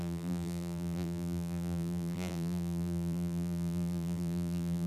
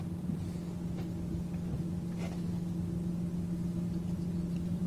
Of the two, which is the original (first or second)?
second